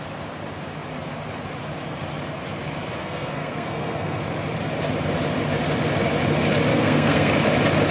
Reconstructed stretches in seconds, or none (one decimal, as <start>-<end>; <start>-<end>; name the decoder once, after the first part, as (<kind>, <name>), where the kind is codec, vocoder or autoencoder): 3.0-4.2 (codec, SNAC); 6.7-7.3